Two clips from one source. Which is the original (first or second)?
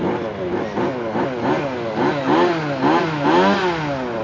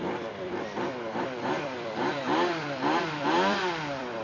first